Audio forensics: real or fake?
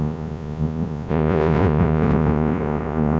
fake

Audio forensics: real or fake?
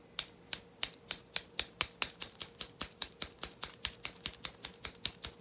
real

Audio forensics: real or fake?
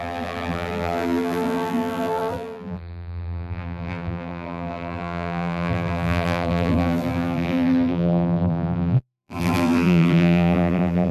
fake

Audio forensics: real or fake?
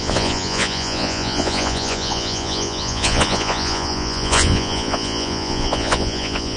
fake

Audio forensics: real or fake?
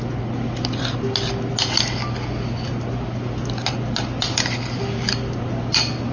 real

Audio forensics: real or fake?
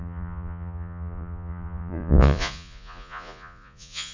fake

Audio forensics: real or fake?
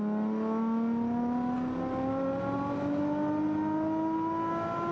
real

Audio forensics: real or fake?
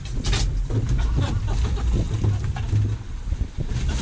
real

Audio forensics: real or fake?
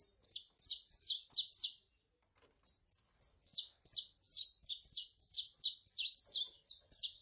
real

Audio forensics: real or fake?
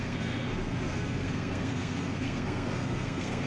fake